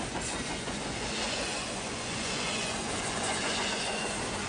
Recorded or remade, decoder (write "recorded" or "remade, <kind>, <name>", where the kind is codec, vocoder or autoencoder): remade, vocoder, Vocos